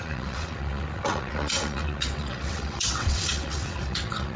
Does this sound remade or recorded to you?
remade